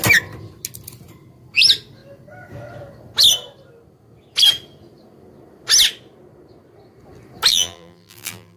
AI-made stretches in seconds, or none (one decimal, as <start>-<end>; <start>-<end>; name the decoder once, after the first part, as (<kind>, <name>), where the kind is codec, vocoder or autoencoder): 7.5-8.6 (vocoder, BigVGAN v2)